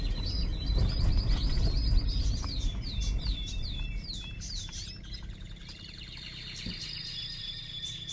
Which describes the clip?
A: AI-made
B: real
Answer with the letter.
A